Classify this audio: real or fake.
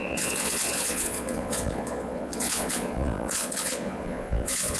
fake